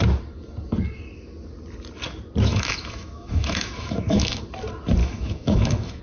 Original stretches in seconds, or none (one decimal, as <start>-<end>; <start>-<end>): 0.0-2.5; 4.4-5.0